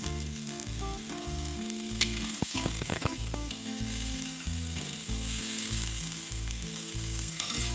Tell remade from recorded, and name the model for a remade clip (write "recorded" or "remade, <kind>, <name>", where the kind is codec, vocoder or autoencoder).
remade, codec, SNAC